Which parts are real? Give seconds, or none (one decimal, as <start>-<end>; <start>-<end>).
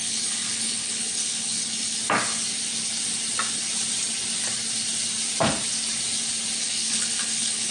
2.0-6.6